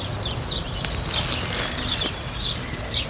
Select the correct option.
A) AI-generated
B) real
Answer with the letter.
B